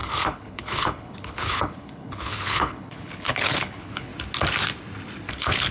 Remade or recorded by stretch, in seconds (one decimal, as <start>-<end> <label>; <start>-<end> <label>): 0.0-4.1 remade; 4.1-5.3 recorded; 5.3-5.7 remade